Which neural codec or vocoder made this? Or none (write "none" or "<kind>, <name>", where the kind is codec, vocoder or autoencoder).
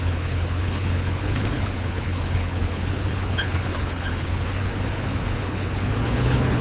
codec, HILCodec